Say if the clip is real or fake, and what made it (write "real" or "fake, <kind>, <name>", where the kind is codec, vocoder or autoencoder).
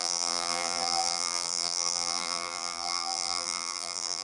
fake, vocoder, BigVGAN v2